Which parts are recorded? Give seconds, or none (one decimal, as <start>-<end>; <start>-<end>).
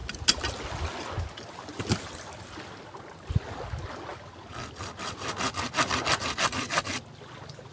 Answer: 0.0-7.7